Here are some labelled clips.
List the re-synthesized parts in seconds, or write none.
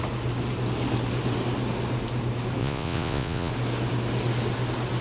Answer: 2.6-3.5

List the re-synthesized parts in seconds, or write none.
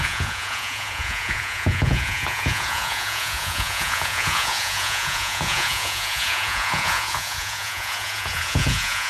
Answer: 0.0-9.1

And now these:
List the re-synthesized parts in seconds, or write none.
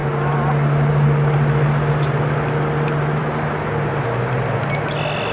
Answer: none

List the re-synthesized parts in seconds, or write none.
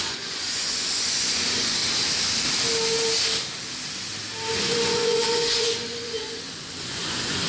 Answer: 0.0-1.8; 4.6-7.5